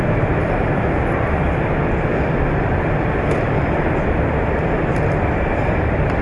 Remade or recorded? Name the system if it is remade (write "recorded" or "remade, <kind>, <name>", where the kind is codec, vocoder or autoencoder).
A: recorded